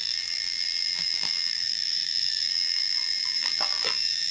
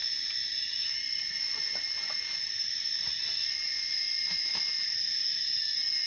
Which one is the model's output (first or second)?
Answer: first